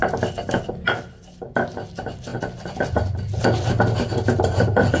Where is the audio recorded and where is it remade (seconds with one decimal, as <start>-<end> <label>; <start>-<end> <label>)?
0.0-5.0 recorded